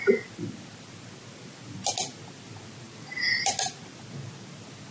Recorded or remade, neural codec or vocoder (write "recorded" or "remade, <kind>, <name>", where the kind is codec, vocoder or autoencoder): recorded